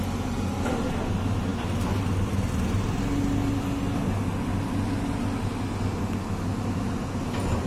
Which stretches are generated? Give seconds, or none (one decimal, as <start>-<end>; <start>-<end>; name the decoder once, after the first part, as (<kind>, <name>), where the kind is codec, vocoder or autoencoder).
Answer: none